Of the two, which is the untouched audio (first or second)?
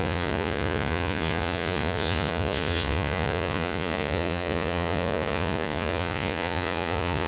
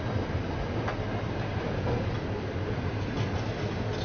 second